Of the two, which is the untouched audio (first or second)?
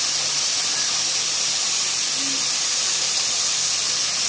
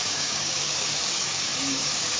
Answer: first